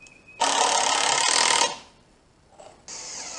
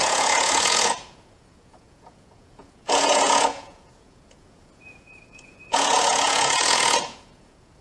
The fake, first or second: second